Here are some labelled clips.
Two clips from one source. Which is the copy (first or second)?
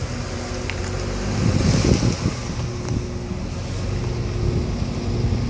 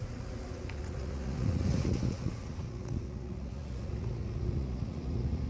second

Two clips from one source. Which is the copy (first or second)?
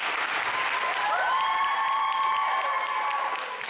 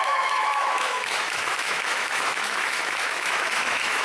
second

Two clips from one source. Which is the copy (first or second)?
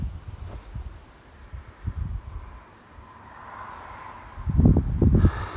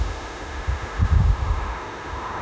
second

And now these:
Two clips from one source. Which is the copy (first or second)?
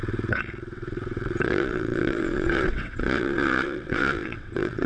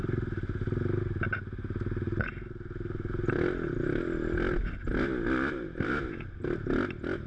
first